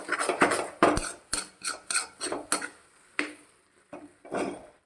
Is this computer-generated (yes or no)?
no